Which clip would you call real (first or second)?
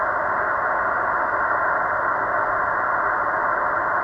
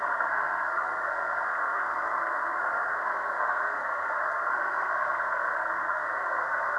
first